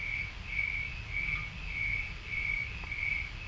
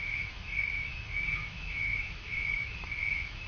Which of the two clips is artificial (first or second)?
second